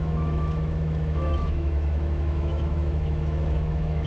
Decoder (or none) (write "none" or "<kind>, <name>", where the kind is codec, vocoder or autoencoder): autoencoder, DAC-VAE